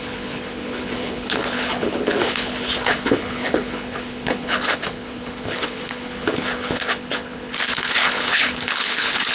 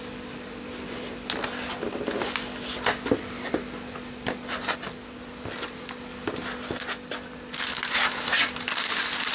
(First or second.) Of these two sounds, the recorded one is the second